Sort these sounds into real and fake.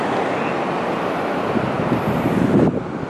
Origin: real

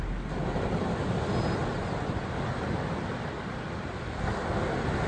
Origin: real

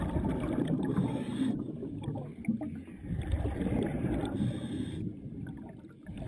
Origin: real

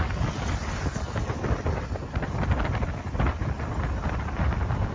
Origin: real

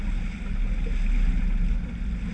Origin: real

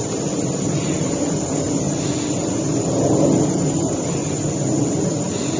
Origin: real